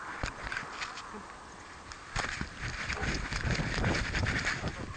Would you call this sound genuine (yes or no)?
yes